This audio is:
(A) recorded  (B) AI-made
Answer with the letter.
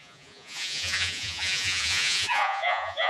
B